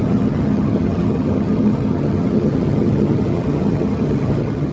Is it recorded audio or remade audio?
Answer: remade